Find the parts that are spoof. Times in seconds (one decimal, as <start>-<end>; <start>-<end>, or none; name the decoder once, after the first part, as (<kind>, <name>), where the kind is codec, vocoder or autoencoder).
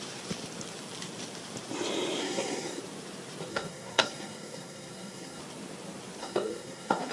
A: 2.2-2.8 (codec, SNAC); 3.5-5.4; 6.2-7.1